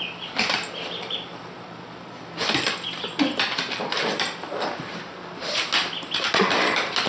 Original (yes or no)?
yes